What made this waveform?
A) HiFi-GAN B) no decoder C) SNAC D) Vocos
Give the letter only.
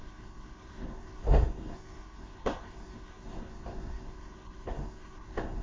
C